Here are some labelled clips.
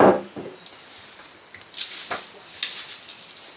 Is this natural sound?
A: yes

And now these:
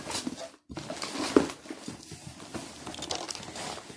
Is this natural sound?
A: yes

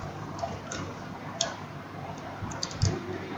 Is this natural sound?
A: no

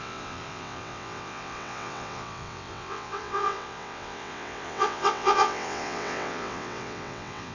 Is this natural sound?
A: no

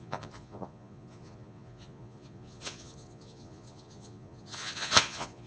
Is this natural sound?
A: no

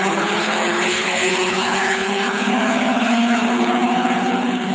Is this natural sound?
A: no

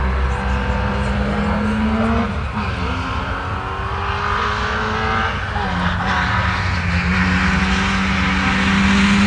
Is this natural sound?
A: yes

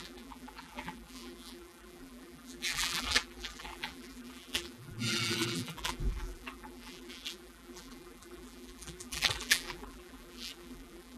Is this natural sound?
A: no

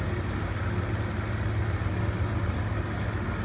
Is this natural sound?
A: yes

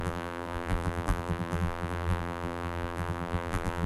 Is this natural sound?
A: no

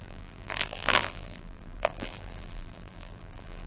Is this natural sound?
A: no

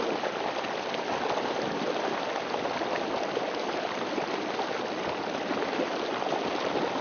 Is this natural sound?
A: yes